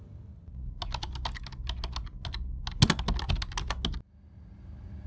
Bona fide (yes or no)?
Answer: yes